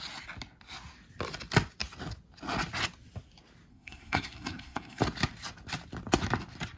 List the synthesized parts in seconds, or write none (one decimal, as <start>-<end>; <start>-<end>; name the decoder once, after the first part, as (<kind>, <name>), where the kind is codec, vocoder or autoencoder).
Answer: 3.7-5.0 (codec, SNAC)